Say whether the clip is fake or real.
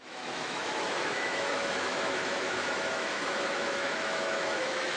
fake